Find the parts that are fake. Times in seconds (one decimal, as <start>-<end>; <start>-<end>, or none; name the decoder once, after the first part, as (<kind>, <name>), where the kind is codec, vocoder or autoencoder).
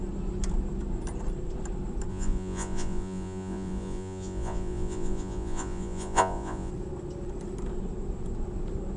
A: 2.1-6.7 (vocoder, Vocos)